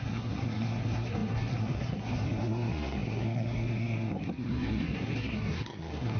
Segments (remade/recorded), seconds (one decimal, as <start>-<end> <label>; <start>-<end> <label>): 0.0-6.2 remade